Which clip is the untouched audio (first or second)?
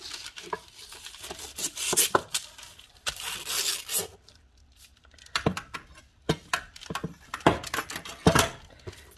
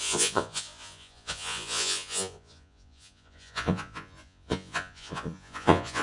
first